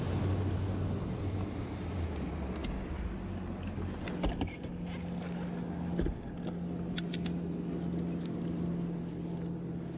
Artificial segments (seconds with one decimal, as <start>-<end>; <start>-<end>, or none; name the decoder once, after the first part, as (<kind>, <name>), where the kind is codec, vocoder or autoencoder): none

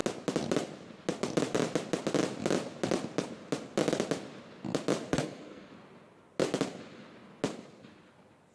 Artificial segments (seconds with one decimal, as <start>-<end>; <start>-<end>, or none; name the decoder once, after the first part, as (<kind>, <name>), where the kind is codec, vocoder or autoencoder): 5.1-5.7 (codec, SNAC)